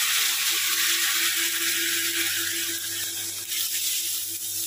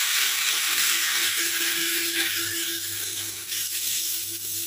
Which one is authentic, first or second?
first